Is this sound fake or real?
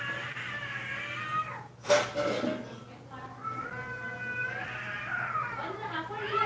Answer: real